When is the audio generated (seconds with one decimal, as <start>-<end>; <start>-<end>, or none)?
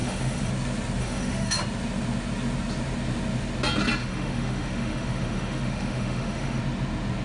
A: 0.0-0.5; 1.0-1.6; 4.0-6.6